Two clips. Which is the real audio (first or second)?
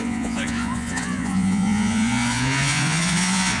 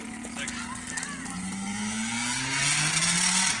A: second